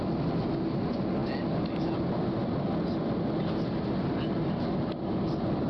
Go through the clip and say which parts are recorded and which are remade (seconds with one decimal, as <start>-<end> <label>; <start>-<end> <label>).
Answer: 0.0-5.7 recorded